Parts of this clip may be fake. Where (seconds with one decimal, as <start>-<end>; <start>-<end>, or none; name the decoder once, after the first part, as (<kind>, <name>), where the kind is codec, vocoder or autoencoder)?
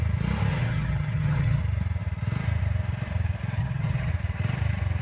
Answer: 0.5-1.6 (vocoder, HiFi-GAN); 3.6-4.1